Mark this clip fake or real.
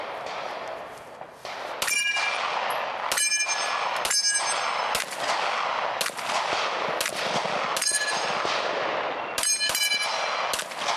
real